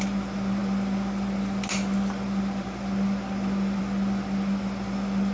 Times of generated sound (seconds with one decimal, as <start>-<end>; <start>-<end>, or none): none

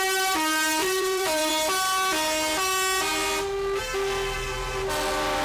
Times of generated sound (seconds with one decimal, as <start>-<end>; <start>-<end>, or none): 0.8-1.5

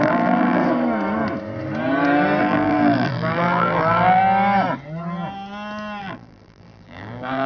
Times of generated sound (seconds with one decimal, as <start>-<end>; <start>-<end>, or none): 0.0-0.6; 2.4-4.2; 6.0-7.5

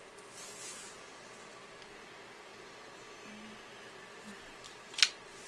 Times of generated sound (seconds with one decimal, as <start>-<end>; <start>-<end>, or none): 2.5-3.3